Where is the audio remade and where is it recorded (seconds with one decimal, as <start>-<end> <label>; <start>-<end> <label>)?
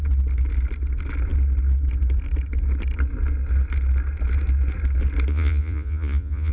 0.0-5.3 recorded; 5.3-6.5 remade